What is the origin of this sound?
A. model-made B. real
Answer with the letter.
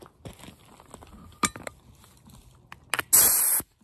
B